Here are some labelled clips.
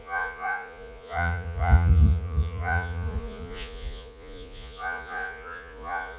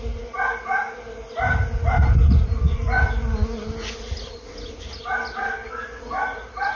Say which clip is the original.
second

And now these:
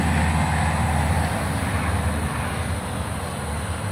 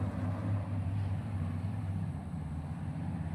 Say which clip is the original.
first